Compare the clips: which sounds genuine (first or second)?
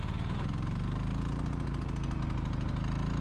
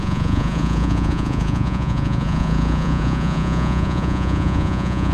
first